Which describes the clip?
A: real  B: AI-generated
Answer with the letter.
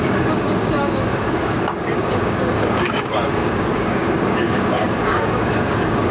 B